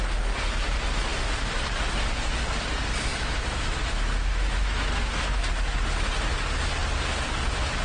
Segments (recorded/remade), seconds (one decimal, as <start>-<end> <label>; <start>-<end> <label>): 0.0-3.1 recorded; 3.1-5.5 remade; 5.5-7.8 recorded

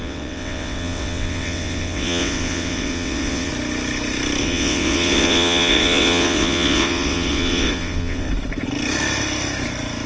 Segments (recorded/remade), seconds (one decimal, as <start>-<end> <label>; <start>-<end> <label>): 0.0-3.5 remade; 3.5-4.4 recorded; 4.4-8.3 remade; 8.3-10.1 recorded